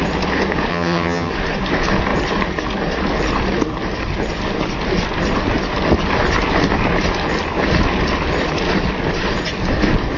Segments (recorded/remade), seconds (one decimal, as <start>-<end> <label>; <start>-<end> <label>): 0.0-0.7 recorded; 0.7-1.3 remade; 1.3-10.2 recorded